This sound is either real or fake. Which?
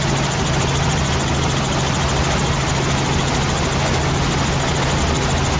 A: real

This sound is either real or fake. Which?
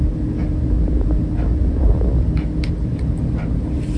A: real